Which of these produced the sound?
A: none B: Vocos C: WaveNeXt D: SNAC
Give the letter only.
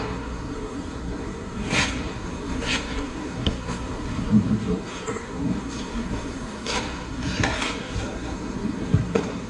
D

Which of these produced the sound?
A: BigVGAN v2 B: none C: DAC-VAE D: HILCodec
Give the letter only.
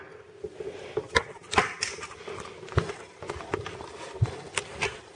B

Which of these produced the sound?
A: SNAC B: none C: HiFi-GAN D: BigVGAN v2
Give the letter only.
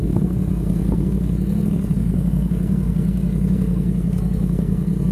A